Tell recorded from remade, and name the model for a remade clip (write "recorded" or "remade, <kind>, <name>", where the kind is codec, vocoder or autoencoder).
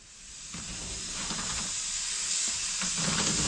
recorded